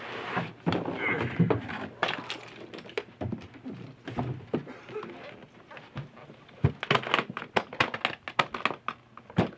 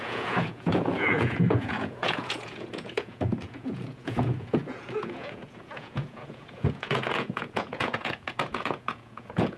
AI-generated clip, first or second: second